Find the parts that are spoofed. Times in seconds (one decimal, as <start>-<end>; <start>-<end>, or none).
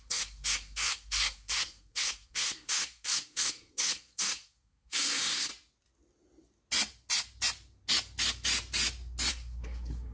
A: 0.0-5.5; 9.3-10.1